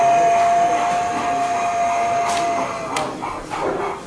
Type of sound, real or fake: real